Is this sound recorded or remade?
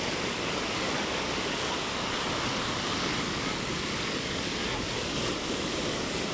remade